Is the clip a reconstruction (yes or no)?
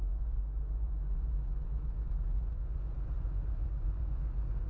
yes